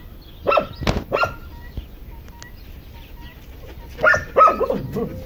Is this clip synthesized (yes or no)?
no